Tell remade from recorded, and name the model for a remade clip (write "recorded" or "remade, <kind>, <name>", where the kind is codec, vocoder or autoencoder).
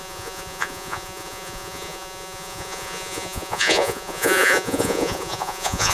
remade, vocoder, Vocos